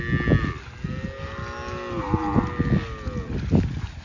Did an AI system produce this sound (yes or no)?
no